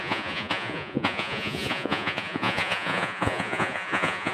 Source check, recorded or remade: remade